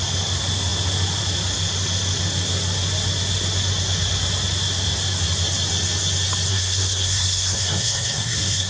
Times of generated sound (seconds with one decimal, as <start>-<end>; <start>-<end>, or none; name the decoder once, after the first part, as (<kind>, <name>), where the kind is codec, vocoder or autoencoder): 6.5-8.7 (codec, SNAC)